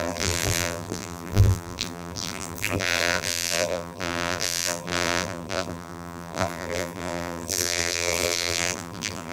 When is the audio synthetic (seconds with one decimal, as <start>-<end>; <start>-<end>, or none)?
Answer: 0.0-9.3